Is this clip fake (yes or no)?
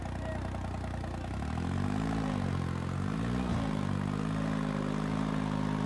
no